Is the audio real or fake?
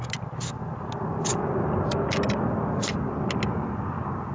real